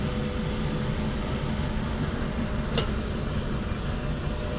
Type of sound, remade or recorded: recorded